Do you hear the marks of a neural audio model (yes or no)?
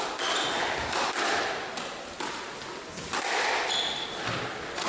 no